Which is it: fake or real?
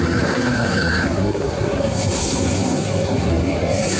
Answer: fake